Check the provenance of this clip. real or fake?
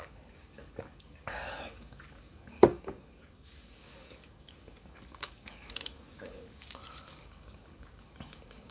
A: fake